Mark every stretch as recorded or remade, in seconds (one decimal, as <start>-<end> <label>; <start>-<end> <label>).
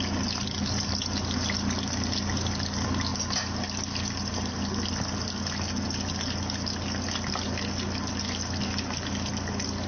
0.0-9.9 recorded